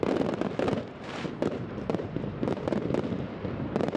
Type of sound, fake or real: fake